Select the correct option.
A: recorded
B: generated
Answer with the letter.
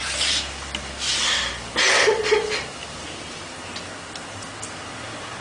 A